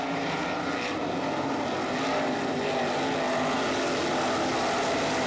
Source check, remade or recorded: recorded